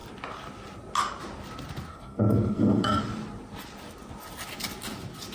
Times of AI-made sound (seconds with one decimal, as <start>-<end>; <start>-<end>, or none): 1.9-3.0